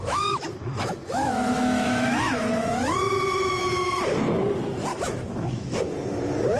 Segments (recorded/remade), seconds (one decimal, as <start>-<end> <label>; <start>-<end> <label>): 0.0-3.6 remade; 3.6-4.9 recorded; 4.9-5.8 remade; 5.8-6.6 recorded